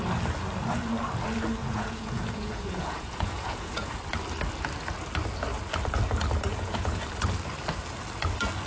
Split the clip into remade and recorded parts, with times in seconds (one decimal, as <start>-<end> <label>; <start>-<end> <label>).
0.0-1.6 recorded; 1.6-3.9 remade; 3.9-6.5 recorded; 6.5-7.0 remade; 7.0-8.7 recorded